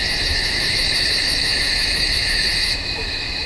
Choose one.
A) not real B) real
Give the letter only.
A